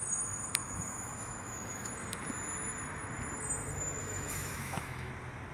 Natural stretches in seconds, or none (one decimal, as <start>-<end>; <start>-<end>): 0.0-0.6; 1.9-4.0; 5.1-5.5